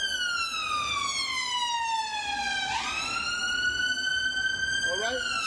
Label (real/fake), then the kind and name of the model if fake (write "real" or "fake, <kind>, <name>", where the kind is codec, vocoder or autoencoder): real